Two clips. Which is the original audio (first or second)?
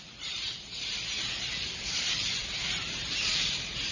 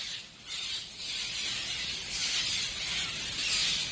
second